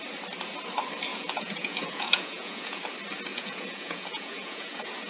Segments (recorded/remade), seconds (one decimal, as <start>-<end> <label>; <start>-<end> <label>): 0.0-1.1 recorded; 1.1-2.8 remade; 2.8-3.3 recorded; 3.3-5.1 remade